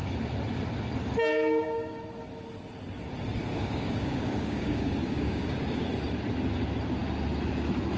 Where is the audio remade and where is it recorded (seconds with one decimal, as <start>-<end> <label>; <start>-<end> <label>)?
0.0-1.3 recorded; 1.3-2.1 remade; 2.1-3.5 recorded; 3.5-5.9 remade; 5.9-8.0 recorded